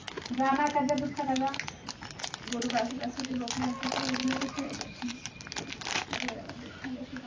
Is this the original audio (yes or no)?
yes